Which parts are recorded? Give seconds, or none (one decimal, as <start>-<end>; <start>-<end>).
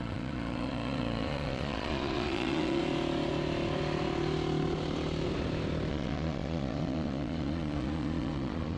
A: 2.8-5.9